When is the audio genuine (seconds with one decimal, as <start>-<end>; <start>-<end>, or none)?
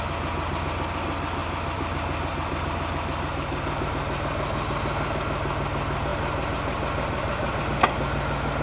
0.0-1.4; 3.9-6.1; 7.6-8.6